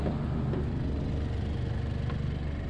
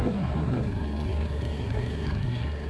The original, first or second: first